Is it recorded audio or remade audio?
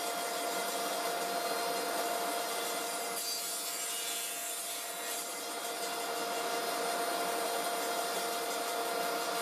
recorded